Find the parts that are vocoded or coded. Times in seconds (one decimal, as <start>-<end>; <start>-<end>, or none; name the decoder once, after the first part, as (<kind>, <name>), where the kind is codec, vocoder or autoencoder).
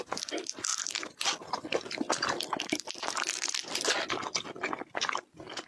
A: 0.7-4.1 (vocoder, BigVGAN v2)